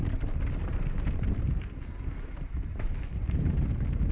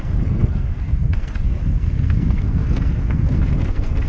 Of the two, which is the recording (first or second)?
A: first